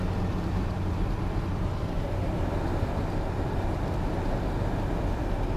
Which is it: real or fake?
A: fake